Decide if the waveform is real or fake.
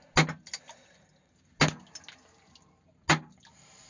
real